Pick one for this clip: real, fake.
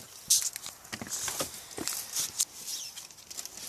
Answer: real